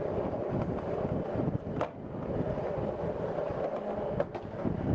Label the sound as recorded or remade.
recorded